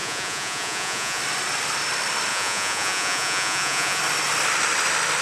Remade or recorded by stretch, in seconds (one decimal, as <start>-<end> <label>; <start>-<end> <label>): 0.0-1.2 remade; 1.2-2.3 recorded; 2.3-4.0 remade; 4.0-5.2 recorded